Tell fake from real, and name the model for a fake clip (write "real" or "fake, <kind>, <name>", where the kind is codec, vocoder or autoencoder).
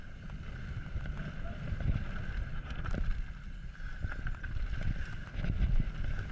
real